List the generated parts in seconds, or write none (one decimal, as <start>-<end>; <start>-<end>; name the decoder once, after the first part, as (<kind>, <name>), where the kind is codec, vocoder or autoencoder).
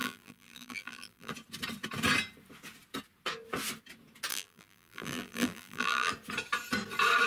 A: 0.0-1.3 (vocoder, BigVGAN v2); 4.3-6.1